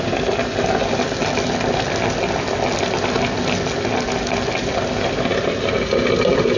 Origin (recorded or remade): recorded